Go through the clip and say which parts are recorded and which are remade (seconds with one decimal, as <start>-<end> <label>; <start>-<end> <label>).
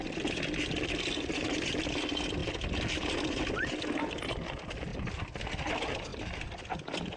0.0-7.2 recorded